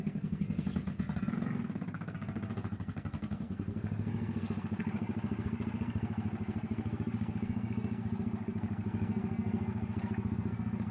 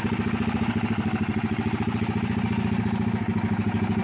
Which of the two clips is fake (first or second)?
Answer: first